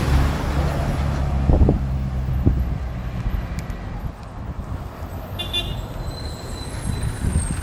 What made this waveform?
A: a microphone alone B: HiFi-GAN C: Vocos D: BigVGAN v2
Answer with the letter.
A